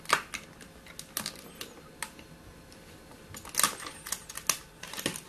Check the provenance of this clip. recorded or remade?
recorded